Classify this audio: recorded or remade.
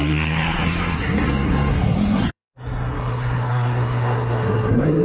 remade